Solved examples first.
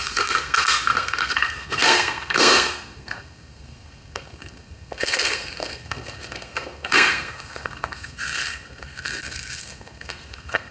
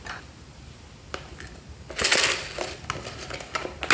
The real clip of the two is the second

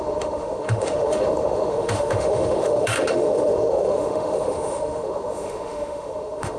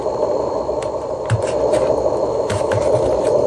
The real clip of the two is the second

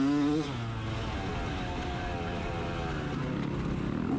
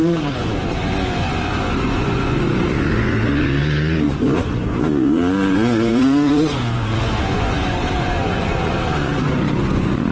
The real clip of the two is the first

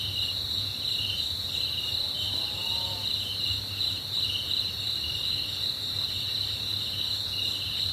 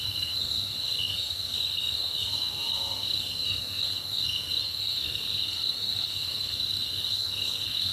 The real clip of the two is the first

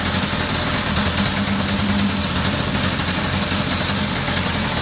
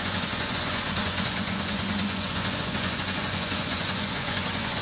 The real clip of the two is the first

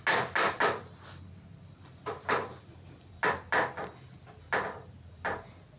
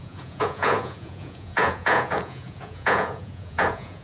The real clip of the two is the first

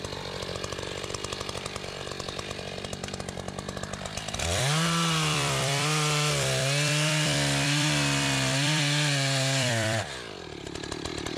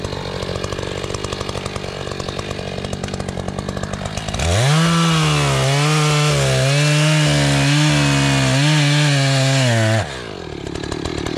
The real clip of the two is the second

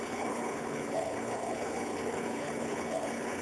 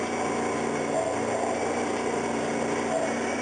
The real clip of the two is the second